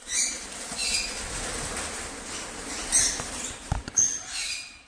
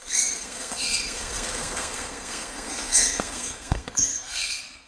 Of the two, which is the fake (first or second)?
second